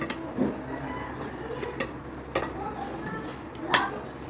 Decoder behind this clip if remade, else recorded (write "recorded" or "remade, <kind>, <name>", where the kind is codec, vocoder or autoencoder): recorded